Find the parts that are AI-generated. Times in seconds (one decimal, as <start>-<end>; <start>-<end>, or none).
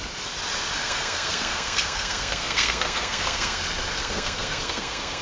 0.8-3.6; 4.0-5.2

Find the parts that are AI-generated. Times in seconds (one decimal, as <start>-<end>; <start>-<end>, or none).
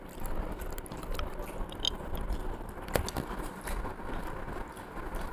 none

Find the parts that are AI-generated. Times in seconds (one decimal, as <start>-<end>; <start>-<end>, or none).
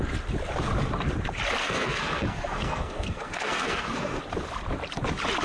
1.6-4.2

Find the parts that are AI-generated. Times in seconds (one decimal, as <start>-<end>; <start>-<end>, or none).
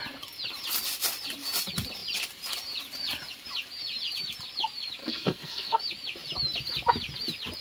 5.0-5.8